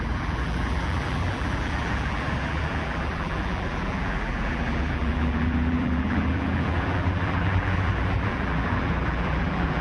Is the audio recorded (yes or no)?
no